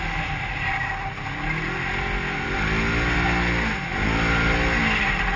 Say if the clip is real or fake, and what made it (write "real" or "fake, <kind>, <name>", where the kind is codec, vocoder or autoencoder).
real